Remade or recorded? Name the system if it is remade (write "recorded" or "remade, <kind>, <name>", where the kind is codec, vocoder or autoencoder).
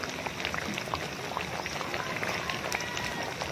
recorded